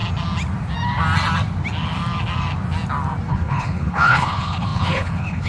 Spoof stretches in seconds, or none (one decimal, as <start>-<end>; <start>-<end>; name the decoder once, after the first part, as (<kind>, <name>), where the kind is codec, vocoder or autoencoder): 3.3-5.5 (codec, HILCodec)